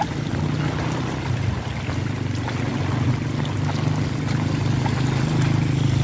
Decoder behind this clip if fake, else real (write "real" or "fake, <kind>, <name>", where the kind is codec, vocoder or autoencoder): real